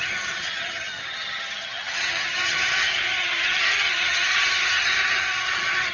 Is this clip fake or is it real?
fake